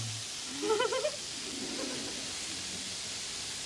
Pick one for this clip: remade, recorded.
recorded